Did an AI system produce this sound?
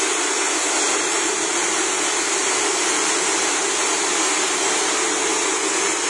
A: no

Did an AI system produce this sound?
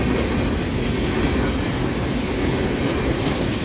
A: no